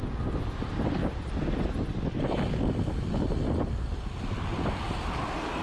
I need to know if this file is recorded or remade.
recorded